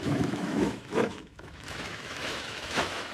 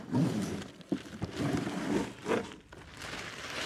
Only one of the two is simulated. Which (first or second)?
first